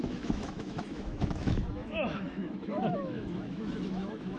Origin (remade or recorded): remade